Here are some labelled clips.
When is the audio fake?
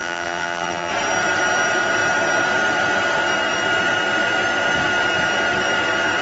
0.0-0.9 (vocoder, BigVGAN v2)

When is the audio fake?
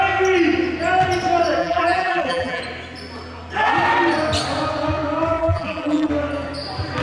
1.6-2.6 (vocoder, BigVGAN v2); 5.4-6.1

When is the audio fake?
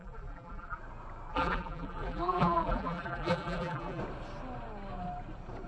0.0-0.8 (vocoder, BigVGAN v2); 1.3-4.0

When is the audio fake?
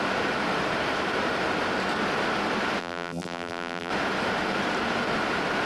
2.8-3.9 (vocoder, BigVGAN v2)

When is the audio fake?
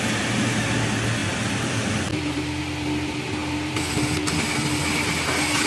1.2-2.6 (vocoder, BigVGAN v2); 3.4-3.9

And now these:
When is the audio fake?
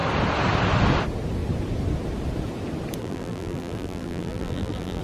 3.0-5.0 (vocoder, BigVGAN v2)